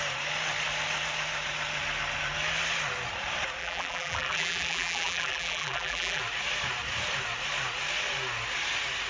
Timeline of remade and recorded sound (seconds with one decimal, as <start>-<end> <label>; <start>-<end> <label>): 0.0-3.6 recorded; 3.6-6.2 remade; 6.2-9.1 recorded